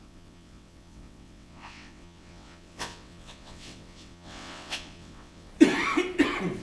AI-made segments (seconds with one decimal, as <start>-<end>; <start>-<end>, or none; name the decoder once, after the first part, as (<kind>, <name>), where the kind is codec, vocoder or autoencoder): 0.0-5.5 (vocoder, WaveNeXt)